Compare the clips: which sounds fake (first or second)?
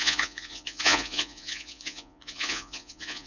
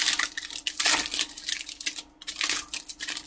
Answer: first